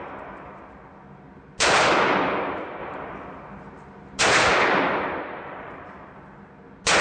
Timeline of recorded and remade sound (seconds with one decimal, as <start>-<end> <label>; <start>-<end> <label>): 0.0-7.0 recorded